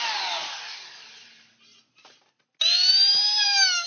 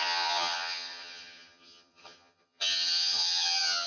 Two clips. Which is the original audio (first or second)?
first